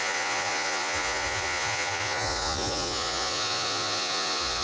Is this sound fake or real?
fake